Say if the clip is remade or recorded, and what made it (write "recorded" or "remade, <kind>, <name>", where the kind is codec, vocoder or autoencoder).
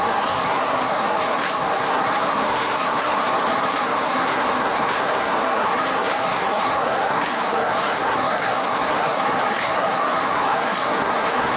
remade, codec, SNAC